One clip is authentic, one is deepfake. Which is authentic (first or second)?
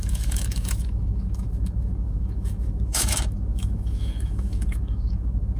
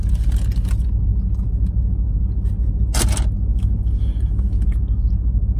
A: second